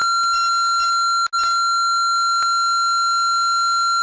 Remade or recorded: recorded